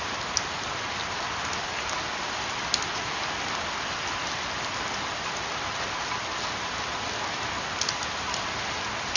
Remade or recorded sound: recorded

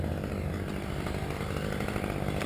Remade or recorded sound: recorded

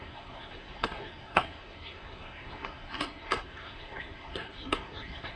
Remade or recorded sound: remade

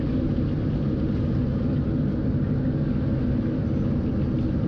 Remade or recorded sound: recorded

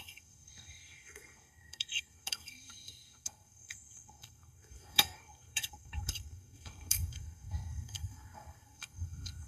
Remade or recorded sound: remade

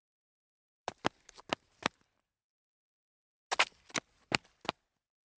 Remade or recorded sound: recorded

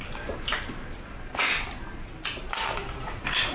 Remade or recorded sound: recorded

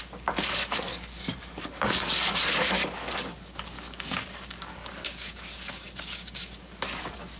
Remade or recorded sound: remade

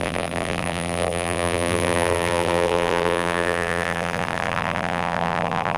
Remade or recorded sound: remade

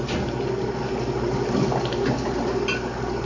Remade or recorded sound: recorded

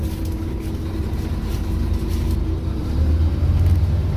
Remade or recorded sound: recorded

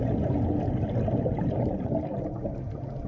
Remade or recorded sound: recorded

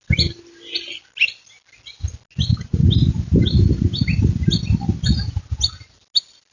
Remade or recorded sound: recorded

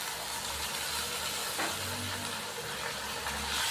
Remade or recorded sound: recorded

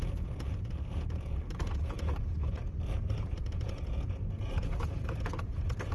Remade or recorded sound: remade